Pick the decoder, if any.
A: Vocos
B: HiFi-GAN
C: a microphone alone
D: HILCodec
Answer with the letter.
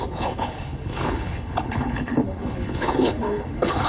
D